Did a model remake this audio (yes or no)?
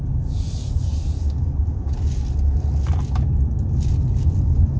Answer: no